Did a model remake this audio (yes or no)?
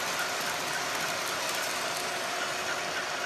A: no